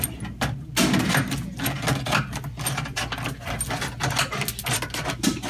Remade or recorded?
recorded